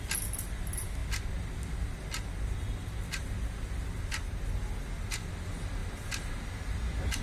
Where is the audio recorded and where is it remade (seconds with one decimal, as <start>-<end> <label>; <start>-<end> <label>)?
0.0-7.2 recorded